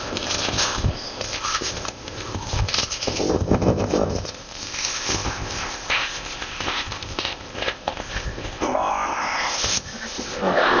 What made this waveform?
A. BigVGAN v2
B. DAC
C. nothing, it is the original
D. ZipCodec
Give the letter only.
D